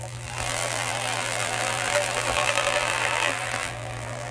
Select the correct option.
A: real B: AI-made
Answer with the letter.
B